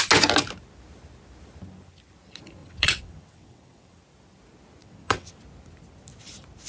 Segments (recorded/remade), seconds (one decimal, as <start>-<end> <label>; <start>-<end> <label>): 0.0-2.6 recorded; 2.6-4.0 remade; 4.0-4.8 recorded; 4.8-5.3 remade; 5.3-6.7 recorded